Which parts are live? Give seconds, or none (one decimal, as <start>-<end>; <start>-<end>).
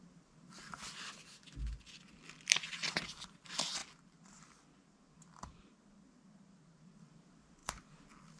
0.0-8.4